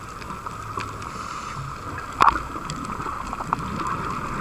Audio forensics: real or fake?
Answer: real